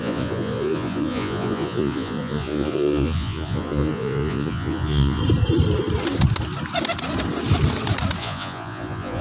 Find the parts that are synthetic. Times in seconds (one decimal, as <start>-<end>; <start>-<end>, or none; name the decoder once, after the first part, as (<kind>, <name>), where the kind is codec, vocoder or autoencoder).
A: 0.0-5.2 (vocoder, Vocos); 8.2-9.2